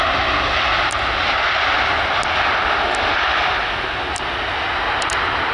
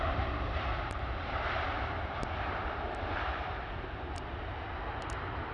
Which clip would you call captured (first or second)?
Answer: first